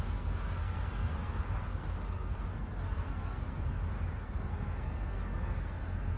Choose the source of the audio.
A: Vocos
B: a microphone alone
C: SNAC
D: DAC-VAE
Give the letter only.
C